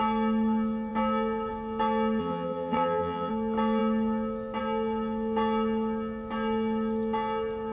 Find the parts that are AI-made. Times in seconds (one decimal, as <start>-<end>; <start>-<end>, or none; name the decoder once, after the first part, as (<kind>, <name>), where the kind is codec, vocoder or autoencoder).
2.2-3.3 (vocoder, HiFi-GAN)